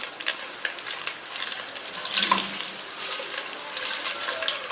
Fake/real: real